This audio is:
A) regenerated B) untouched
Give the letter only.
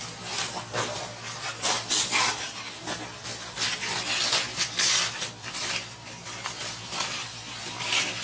B